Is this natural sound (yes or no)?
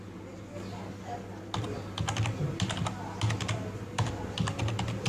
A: yes